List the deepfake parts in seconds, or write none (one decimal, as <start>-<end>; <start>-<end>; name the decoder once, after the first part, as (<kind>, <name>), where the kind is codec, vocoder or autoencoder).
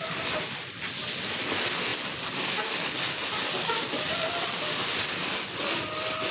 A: none